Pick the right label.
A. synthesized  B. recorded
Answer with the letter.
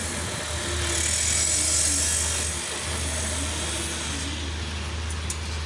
B